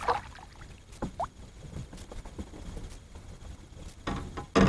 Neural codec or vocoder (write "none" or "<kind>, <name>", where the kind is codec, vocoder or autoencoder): none